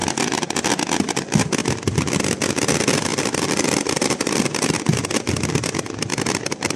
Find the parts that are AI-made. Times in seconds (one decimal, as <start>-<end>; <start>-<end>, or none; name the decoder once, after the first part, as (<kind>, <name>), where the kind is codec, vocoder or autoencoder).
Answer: 0.0-0.5 (vocoder, BigVGAN v2); 3.1-4.8

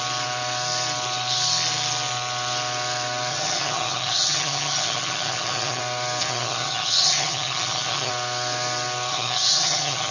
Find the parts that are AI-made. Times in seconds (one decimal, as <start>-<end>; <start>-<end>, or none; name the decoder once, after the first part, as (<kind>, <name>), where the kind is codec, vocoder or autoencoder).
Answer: 3.3-5.8 (vocoder, HiFi-GAN); 6.2-8.1; 9.1-10.1

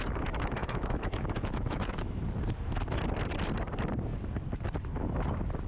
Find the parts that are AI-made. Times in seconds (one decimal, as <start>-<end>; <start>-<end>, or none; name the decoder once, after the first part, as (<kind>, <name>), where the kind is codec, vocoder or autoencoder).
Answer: 0.6-2.2 (autoencoder, DAC-VAE)

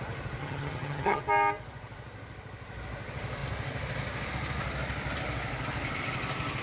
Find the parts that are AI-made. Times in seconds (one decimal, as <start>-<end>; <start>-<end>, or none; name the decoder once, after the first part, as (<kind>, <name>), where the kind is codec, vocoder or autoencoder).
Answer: 0.4-1.2 (vocoder, HiFi-GAN)

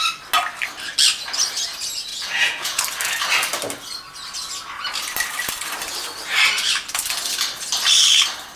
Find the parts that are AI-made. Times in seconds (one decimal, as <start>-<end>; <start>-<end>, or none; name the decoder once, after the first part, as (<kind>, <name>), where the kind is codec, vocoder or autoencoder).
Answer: 2.1-2.8 (vocoder, Vocos)

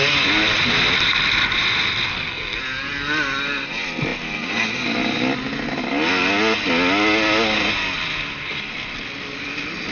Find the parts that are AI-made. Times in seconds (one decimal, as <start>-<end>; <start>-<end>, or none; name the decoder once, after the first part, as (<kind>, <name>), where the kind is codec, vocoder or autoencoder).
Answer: 2.1-2.6 (codec, SNAC)

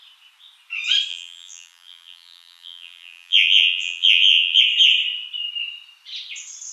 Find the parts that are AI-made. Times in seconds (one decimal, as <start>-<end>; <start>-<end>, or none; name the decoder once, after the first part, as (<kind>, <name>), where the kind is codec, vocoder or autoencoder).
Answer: 1.1-4.6 (vocoder, BigVGAN v2)